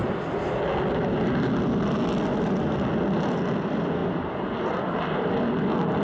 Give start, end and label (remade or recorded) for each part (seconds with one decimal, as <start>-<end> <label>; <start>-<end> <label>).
0.0-4.0 recorded; 4.0-5.3 remade; 5.3-6.0 recorded